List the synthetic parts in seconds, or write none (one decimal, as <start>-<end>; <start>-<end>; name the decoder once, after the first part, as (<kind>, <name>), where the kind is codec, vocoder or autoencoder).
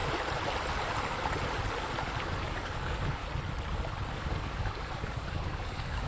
2.2-3.2 (codec, DAC); 4.1-6.1